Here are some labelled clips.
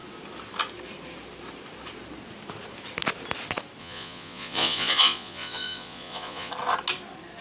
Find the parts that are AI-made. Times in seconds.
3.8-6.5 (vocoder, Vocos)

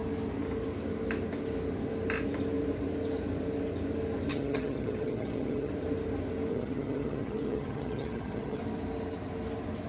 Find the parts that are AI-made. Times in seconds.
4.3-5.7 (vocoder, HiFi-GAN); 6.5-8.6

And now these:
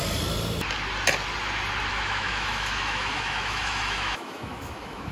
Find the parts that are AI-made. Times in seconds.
1.9-5.1 (autoencoder, DAC-VAE)

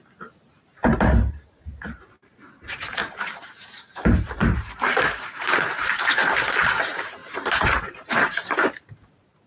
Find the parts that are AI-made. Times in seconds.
0.0-6.2 (vocoder, BigVGAN v2); 6.8-9.5

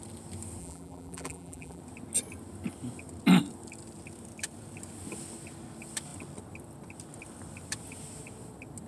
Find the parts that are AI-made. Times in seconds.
0.6-1.8 (vocoder, BigVGAN v2)

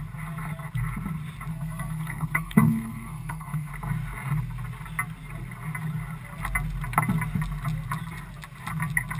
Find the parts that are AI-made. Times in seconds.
1.5-3.7 (codec, SNAC)